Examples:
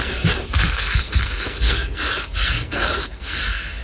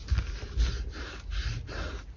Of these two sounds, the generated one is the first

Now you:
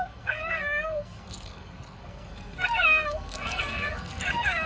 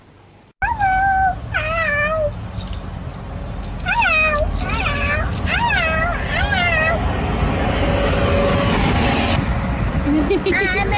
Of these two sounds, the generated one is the first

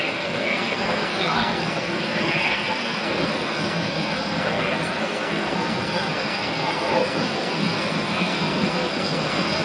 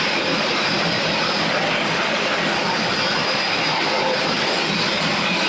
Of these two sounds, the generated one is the first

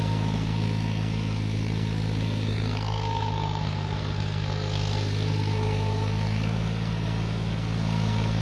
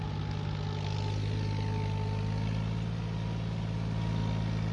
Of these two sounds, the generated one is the first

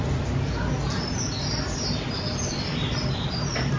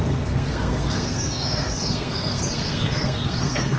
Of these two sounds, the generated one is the second